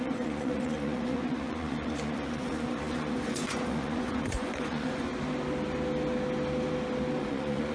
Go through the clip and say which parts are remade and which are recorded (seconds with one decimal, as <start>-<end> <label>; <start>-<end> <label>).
0.0-5.1 remade; 5.1-7.2 recorded; 7.2-7.7 remade